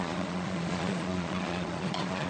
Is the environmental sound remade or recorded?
remade